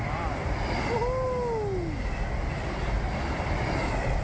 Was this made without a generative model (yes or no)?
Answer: yes